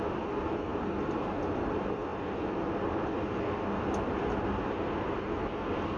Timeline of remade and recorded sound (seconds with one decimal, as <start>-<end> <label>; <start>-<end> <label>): 0.0-2.1 recorded; 2.1-3.4 remade; 3.4-6.0 recorded